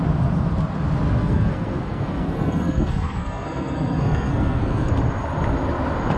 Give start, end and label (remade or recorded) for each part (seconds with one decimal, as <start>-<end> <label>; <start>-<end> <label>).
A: 0.0-1.2 recorded; 1.2-4.9 remade; 4.9-6.2 recorded